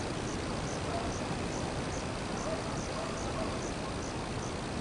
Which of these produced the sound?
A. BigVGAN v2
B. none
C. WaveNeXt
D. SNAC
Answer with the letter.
B